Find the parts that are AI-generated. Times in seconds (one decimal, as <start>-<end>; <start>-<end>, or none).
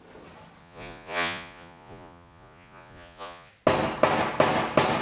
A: 0.6-3.5